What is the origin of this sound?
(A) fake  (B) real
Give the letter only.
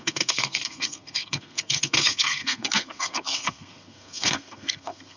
A